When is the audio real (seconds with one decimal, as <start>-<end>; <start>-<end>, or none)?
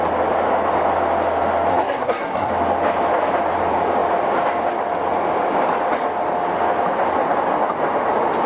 0.0-1.7; 2.5-8.5